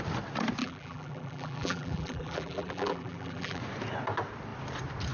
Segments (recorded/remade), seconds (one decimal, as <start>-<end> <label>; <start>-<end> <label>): 0.0-0.6 recorded; 0.6-3.6 remade; 3.6-5.1 recorded